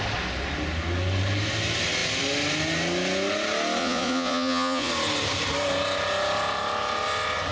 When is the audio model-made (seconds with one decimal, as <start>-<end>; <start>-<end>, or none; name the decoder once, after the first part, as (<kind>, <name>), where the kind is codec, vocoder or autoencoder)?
3.8-4.9 (vocoder, Vocos)